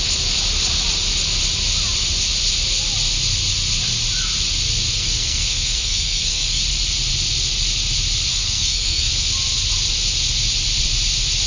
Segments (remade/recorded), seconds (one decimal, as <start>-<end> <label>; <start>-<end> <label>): 0.0-5.0 recorded; 5.0-6.6 remade; 6.6-8.3 recorded; 8.3-9.1 remade; 9.1-11.5 recorded